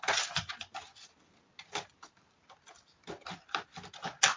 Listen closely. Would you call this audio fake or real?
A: real